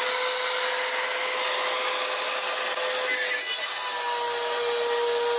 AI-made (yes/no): no